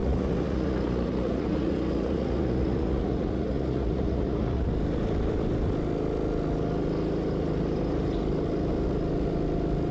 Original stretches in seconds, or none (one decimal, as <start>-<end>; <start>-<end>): 4.7-9.9